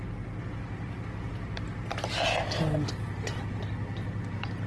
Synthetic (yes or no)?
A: no